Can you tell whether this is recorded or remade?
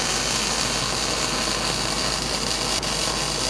recorded